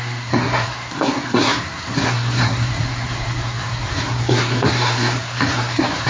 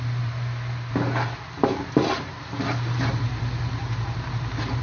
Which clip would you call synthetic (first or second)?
first